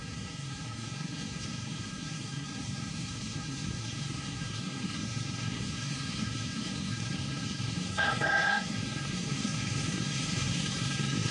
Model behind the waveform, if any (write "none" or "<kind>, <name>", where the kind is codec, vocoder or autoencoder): codec, SNAC